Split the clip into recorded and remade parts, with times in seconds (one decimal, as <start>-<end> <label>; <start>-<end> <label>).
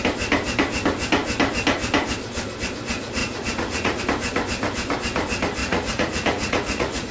0.0-3.2 recorded; 3.2-4.0 remade; 4.0-5.6 recorded; 5.6-7.1 remade